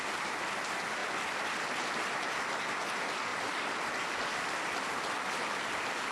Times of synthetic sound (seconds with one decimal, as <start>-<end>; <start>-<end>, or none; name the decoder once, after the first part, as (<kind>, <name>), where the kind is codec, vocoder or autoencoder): none